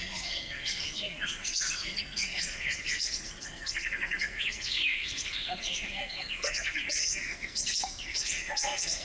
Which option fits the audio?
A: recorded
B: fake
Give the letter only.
B